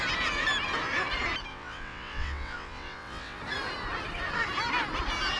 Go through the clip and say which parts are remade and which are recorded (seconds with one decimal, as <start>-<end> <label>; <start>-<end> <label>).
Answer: 0.0-1.5 recorded; 1.5-3.4 remade; 3.4-5.4 recorded